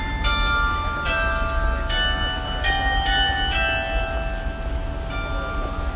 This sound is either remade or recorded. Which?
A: recorded